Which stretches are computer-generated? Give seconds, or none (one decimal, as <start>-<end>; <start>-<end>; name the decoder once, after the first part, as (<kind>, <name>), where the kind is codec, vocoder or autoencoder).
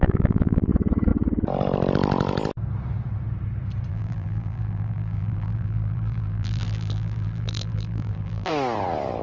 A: 0.0-0.7 (vocoder, BigVGAN v2); 3.9-8.5